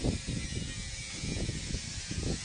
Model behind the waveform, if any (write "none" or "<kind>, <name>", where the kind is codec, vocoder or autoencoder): none